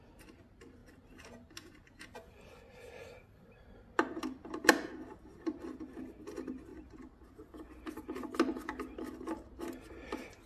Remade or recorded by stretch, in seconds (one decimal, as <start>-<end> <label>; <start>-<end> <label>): 0.0-10.5 recorded